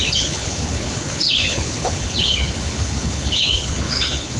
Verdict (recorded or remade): remade